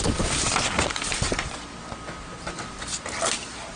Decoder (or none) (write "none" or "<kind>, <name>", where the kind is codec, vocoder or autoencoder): none